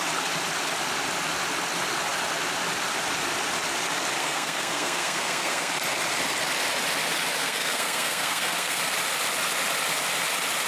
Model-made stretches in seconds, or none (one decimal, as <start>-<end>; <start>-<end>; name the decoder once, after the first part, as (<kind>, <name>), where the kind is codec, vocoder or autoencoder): 4.2-5.7 (codec, SNAC); 7.4-8.8